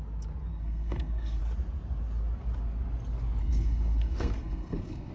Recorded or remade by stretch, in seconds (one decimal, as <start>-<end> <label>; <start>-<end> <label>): 0.0-0.5 recorded; 0.5-1.4 remade; 1.4-3.4 recorded; 3.4-5.1 remade